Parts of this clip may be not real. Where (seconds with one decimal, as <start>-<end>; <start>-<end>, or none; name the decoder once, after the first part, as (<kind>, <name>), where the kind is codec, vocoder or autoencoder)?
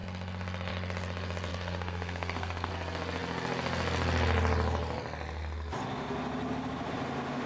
1.5-2.7 (codec, SNAC)